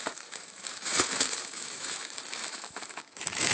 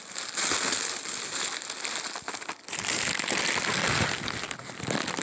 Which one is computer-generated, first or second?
first